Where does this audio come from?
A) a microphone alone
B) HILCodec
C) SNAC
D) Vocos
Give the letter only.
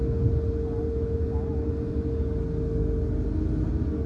A